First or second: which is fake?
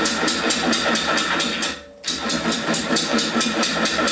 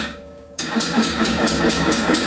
second